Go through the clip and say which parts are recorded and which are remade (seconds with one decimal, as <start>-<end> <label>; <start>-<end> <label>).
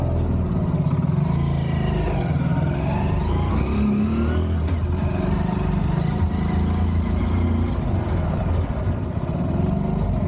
0.0-10.3 recorded